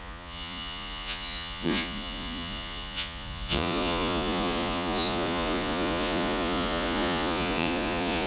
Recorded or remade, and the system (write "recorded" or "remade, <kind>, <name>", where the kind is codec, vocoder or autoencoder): remade, vocoder, Vocos